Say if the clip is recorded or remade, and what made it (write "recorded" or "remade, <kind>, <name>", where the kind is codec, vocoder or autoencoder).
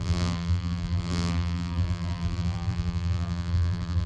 remade, vocoder, BigVGAN v2